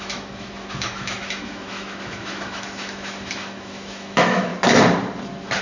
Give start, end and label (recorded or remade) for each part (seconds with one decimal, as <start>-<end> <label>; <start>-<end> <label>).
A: 0.0-4.5 remade; 4.5-5.6 recorded